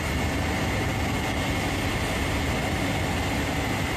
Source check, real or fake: real